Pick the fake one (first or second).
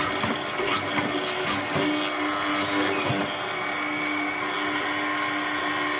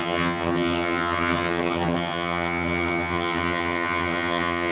second